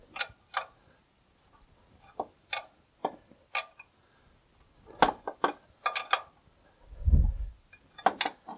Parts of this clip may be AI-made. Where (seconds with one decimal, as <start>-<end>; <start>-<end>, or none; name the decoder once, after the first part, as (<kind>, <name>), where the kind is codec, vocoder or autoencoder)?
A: none